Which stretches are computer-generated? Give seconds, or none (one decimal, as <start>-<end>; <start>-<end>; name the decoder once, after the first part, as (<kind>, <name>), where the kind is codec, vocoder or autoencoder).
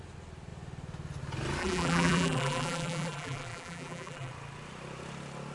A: 1.6-4.3 (vocoder, BigVGAN v2)